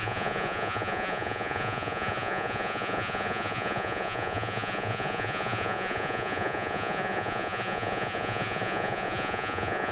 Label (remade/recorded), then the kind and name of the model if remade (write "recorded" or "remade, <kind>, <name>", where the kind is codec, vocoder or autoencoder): remade, vocoder, Vocos